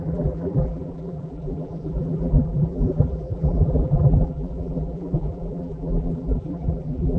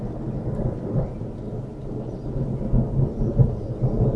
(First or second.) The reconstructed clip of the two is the first